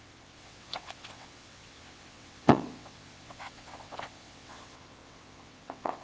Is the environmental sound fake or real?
fake